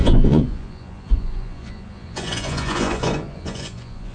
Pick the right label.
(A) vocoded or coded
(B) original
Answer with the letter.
A